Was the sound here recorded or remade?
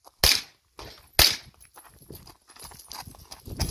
recorded